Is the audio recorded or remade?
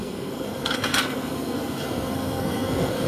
remade